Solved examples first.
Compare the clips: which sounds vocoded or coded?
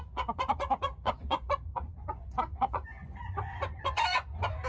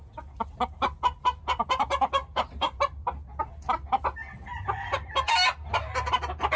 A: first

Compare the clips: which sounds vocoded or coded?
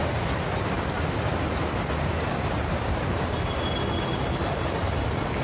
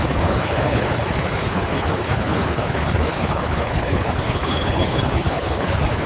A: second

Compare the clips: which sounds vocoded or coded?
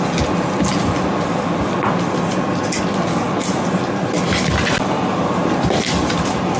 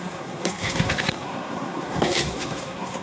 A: second